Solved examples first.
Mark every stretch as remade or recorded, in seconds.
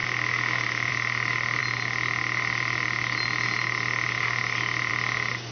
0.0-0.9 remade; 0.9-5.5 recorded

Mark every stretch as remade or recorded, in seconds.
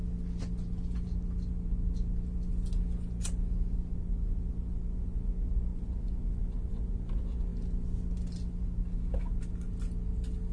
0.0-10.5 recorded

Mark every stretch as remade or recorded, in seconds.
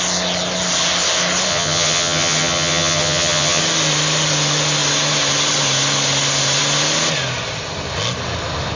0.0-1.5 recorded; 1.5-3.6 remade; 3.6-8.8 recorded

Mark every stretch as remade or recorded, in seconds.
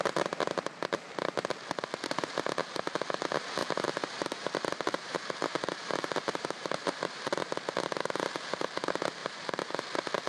0.0-3.6 recorded; 3.6-7.4 remade; 7.4-9.2 recorded; 9.2-9.7 remade; 9.7-10.3 recorded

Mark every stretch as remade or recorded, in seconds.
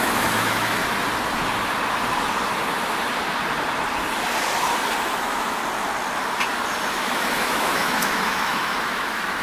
0.0-0.8 remade; 0.8-5.0 recorded; 5.0-5.6 remade; 5.6-6.9 recorded; 6.9-9.4 remade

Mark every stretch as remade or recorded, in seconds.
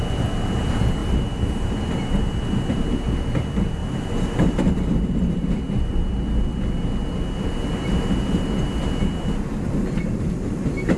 0.0-1.0 recorded; 1.0-1.8 remade; 1.8-3.8 recorded; 3.8-4.6 remade; 4.6-11.0 recorded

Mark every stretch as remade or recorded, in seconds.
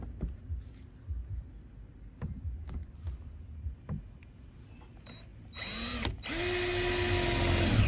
0.0-1.2 recorded; 1.2-2.4 remade; 2.4-2.8 recorded; 2.8-3.7 remade; 3.7-7.9 recorded